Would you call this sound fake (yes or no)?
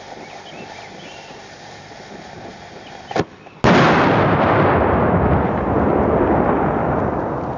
no